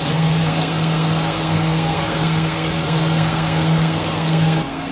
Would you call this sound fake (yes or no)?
yes